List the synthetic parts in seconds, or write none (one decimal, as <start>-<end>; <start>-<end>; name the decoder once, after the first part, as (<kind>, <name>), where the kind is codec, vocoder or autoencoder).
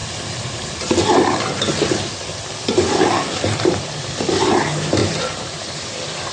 none